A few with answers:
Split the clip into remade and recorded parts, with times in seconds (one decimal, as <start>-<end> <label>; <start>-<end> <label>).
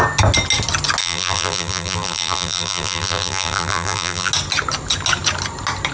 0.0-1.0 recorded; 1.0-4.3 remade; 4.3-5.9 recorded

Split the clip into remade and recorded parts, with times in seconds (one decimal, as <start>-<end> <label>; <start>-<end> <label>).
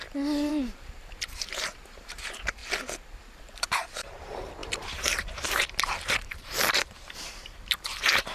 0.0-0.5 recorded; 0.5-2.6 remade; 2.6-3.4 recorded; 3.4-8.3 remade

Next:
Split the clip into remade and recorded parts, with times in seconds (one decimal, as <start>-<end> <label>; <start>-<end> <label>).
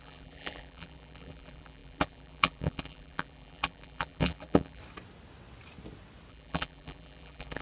0.0-4.8 remade; 4.8-6.3 recorded; 6.3-7.6 remade